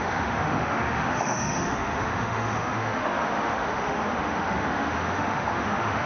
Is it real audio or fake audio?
fake